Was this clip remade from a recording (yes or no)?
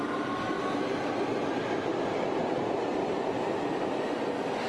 no